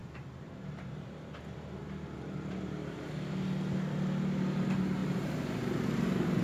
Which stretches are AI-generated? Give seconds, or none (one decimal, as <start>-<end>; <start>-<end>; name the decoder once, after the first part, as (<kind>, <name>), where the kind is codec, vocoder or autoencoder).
0.0-1.4 (vocoder, BigVGAN v2); 1.8-3.3; 5.0-5.9